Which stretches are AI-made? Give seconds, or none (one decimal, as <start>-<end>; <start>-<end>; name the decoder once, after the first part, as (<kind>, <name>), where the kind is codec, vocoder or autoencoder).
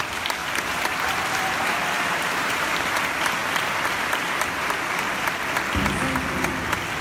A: 0.4-2.7 (vocoder, BigVGAN v2)